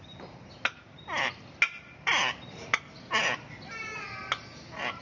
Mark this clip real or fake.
real